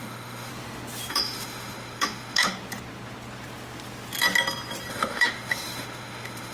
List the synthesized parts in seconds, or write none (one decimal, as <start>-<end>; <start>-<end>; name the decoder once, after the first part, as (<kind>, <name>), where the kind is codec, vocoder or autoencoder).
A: 0.0-0.5 (autoencoder, DAC-VAE); 1.1-2.5; 4.9-6.5